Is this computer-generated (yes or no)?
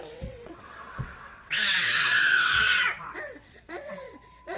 yes